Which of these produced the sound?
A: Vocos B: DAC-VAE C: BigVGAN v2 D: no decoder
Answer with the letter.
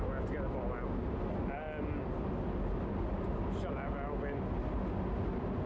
D